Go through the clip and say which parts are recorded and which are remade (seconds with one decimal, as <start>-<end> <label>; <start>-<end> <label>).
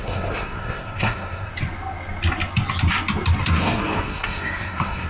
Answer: 0.0-1.5 remade; 1.5-3.4 recorded; 3.4-5.1 remade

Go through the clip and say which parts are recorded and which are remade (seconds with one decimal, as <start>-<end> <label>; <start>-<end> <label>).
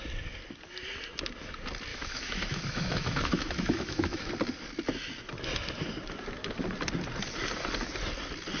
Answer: 0.0-1.9 recorded; 1.9-4.3 remade; 4.3-8.6 recorded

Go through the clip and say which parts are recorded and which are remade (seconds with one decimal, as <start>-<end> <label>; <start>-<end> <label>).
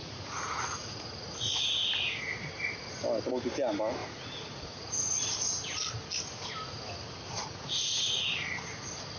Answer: 0.0-1.6 remade; 1.6-4.0 recorded; 4.0-4.9 remade; 4.9-7.4 recorded; 7.4-8.2 remade; 8.2-9.2 recorded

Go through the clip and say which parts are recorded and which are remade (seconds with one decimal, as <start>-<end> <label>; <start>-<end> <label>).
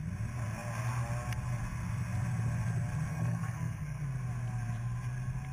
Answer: 0.0-3.1 recorded; 3.1-4.0 remade; 4.0-5.5 recorded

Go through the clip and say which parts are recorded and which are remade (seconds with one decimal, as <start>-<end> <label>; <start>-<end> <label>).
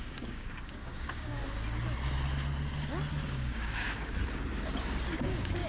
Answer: 0.0-1.4 remade; 1.4-3.3 recorded; 3.3-4.2 remade; 4.2-5.2 recorded; 5.2-5.7 remade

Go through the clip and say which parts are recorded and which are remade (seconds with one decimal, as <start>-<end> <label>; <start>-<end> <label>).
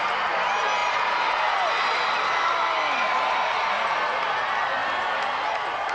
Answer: 0.0-5.9 recorded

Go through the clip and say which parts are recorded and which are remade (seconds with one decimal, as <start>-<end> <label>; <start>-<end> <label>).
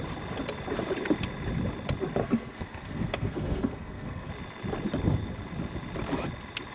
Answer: 0.0-2.2 recorded; 2.2-4.3 remade; 4.3-6.7 recorded